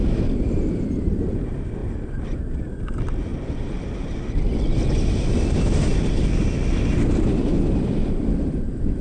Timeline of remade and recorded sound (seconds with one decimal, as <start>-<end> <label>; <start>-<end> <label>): 0.0-9.0 recorded